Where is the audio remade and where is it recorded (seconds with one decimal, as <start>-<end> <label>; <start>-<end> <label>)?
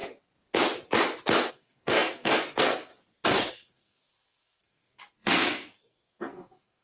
0.0-1.5 recorded; 1.5-2.9 remade; 2.9-3.5 recorded; 3.5-6.8 remade